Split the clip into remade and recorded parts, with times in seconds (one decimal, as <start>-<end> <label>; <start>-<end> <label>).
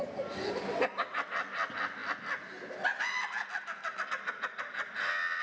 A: 0.0-5.4 recorded